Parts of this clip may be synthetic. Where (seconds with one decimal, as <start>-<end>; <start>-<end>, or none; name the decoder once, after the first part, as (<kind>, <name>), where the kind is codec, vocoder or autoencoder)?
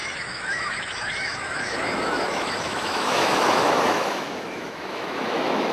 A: 0.0-5.7 (autoencoder, DAC-VAE)